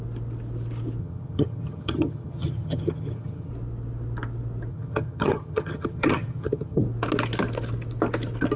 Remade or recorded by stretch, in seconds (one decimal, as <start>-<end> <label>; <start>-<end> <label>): 0.0-1.0 recorded; 1.0-3.5 remade; 3.5-4.7 recorded; 4.7-6.8 remade; 6.8-8.6 recorded